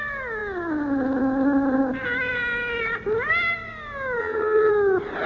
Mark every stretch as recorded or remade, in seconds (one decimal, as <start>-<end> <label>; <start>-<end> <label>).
0.0-4.2 recorded; 4.2-4.7 remade; 4.7-5.3 recorded